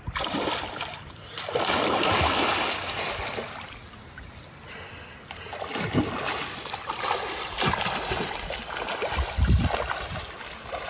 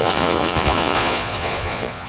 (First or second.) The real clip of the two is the first